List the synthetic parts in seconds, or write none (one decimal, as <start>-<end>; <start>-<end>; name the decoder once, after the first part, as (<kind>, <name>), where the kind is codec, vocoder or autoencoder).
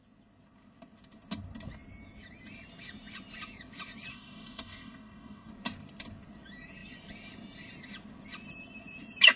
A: 4.1-5.5 (codec, DAC)